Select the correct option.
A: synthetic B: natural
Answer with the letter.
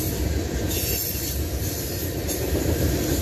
B